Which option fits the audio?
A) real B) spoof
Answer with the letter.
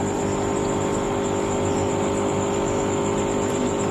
A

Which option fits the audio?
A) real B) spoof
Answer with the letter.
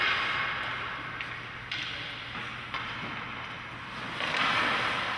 A